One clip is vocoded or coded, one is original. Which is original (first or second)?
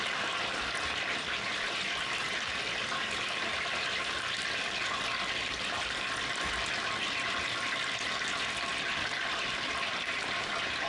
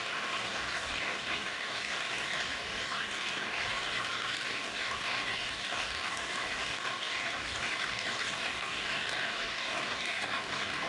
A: first